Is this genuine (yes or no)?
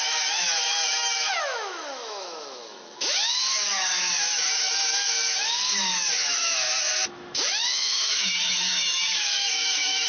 no